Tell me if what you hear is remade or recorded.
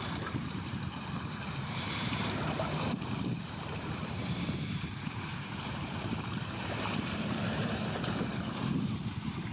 remade